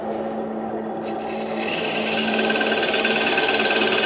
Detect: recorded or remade recorded